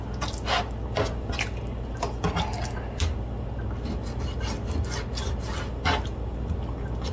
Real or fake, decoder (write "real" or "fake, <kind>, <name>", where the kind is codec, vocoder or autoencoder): real